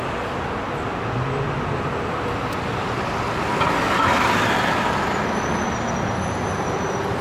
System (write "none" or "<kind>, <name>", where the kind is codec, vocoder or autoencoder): none